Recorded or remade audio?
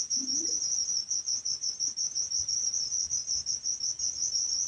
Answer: recorded